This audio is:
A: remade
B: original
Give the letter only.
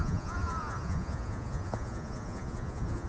A